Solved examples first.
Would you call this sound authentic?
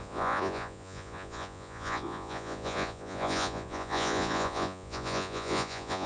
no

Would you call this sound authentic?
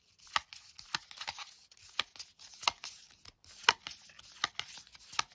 yes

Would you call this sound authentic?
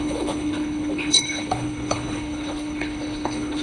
no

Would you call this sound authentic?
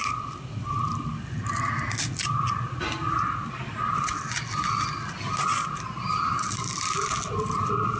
yes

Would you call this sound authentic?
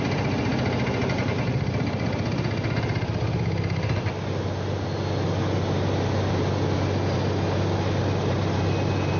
yes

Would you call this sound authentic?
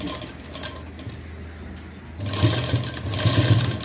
yes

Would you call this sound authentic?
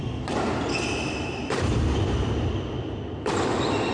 yes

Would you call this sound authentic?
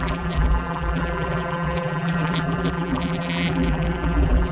no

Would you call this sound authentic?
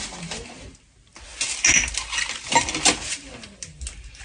yes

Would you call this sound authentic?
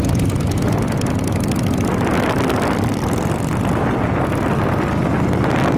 yes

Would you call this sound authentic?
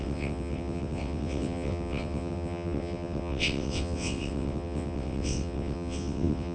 no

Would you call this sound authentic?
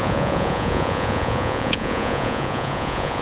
no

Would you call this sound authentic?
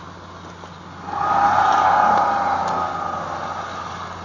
yes